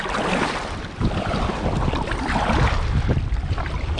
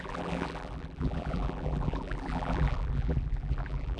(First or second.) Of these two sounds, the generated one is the second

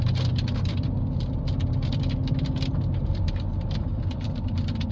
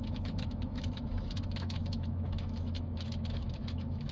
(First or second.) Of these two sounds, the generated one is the second